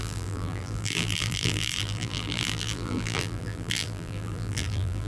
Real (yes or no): no